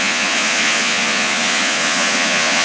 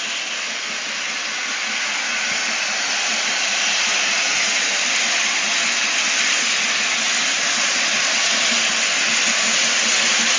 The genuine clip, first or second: second